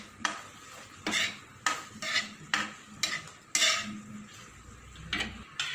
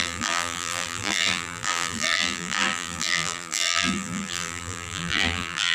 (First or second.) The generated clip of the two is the second